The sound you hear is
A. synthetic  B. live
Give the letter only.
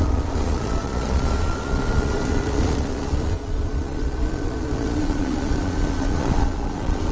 A